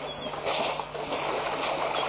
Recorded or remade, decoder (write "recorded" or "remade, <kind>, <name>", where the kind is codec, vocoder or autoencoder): recorded